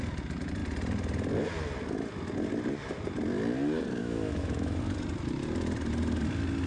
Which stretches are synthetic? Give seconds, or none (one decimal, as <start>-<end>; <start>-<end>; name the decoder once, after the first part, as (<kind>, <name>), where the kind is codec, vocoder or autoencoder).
4.0-4.8 (autoencoder, DAC-VAE)